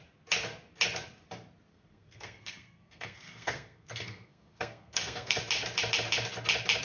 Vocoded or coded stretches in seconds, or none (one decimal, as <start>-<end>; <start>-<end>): 1.7-5.4